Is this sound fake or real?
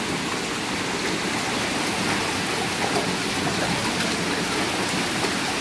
real